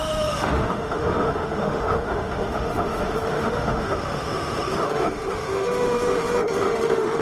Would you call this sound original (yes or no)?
no